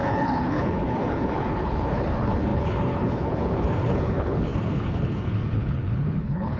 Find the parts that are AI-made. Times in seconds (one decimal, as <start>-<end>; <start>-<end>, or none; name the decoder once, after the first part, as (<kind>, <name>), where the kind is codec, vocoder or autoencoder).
0.0-6.6 (codec, HILCodec)